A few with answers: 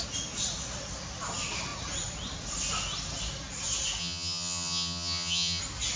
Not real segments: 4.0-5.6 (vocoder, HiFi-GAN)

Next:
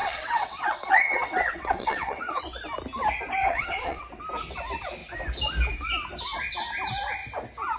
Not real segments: 0.0-2.4 (vocoder, WaveNeXt); 3.4-4.0